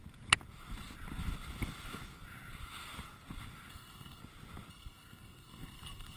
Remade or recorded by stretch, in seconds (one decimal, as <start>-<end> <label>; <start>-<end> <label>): 0.0-3.7 recorded; 3.7-4.2 remade; 4.2-4.7 recorded; 4.7-6.2 remade